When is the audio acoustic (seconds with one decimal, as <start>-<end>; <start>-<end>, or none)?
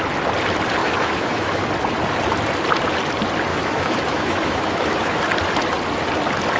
0.0-0.8; 1.6-3.5; 5.2-6.6